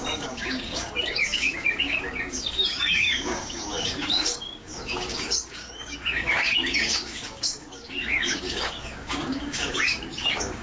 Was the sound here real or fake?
fake